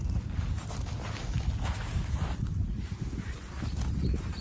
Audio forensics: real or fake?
real